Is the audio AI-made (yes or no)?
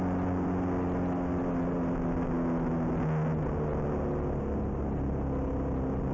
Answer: no